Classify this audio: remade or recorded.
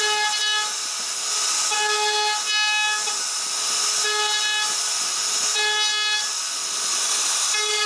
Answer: recorded